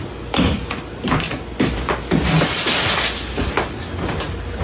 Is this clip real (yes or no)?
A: yes